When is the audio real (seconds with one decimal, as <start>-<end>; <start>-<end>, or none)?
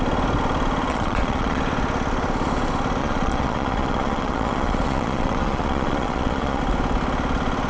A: 0.0-0.9; 1.6-3.0; 6.6-7.7